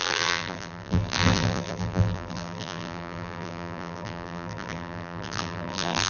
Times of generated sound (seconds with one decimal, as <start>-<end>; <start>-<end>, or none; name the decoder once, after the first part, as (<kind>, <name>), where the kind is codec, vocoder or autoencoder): 0.0-6.1 (vocoder, BigVGAN v2)